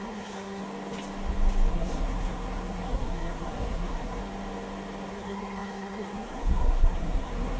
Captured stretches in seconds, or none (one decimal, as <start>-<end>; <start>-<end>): 0.6-1.7; 4.2-5.1